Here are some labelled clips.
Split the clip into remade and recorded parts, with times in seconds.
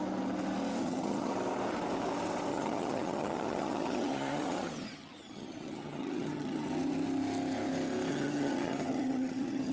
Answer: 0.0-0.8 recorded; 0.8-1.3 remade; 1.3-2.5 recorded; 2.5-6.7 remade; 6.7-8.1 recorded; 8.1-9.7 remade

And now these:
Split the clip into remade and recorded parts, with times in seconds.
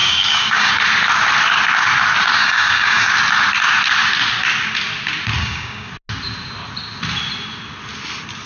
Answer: 0.0-0.7 remade; 0.7-2.4 recorded; 2.4-3.1 remade; 3.1-5.4 recorded; 5.4-5.9 remade; 5.9-8.5 recorded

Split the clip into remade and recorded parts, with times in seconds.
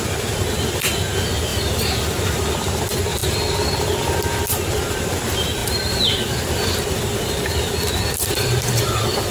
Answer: 0.0-1.5 recorded; 1.5-2.4 remade; 2.4-5.6 recorded; 5.6-9.3 remade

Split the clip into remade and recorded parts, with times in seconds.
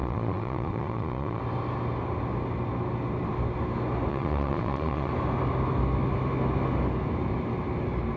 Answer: 0.0-1.4 remade; 1.4-4.1 recorded; 4.1-5.1 remade; 5.1-8.2 recorded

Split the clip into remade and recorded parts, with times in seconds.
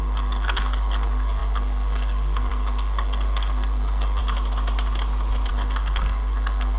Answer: 0.0-4.2 remade; 4.2-5.5 recorded; 5.5-6.8 remade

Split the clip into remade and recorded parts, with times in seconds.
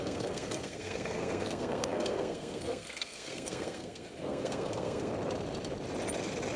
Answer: 0.0-5.1 remade; 5.1-6.6 recorded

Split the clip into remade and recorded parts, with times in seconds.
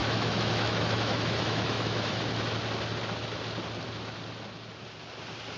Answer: 0.0-2.2 remade; 2.2-5.6 recorded